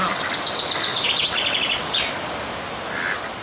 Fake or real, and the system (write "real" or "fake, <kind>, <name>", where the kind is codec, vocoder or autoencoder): real